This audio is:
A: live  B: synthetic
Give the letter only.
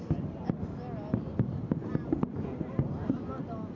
A